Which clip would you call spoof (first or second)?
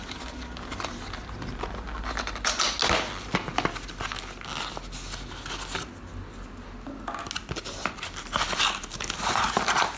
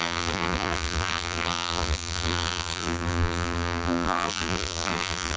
second